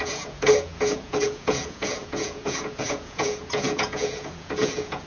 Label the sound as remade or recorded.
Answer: remade